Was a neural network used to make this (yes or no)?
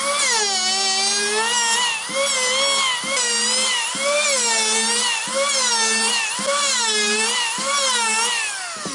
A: no